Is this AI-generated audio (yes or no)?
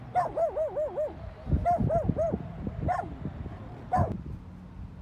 no